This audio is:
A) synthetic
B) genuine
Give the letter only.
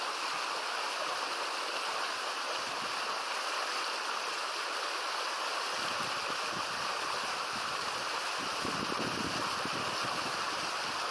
B